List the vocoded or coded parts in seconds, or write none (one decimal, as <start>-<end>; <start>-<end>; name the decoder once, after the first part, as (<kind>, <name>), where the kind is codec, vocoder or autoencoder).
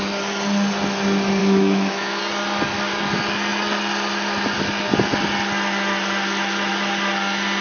1.4-2.2 (autoencoder, DAC-VAE)